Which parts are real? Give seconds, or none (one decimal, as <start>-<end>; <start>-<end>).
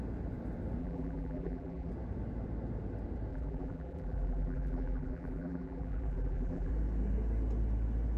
0.0-0.8; 1.9-3.3; 6.7-8.2